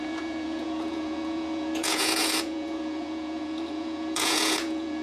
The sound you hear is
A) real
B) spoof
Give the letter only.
B